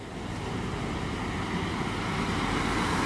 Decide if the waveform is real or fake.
real